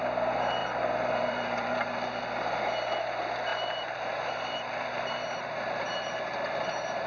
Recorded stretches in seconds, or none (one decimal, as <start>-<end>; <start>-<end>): 0.0-0.6; 2.2-3.5